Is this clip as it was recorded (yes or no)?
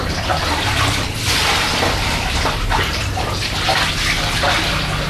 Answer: yes